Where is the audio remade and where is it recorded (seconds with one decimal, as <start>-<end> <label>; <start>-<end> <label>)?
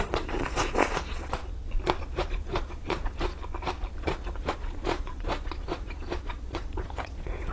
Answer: 0.0-1.4 remade; 1.4-2.0 recorded; 2.0-3.3 remade; 3.3-4.0 recorded; 4.0-7.5 remade